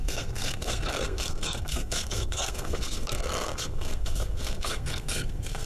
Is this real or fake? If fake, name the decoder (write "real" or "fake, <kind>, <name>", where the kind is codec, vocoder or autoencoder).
fake, codec, SNAC